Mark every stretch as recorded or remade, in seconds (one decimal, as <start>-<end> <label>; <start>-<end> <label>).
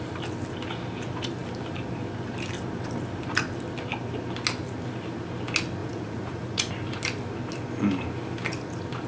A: 0.0-5.8 recorded; 5.8-6.7 remade; 6.7-9.1 recorded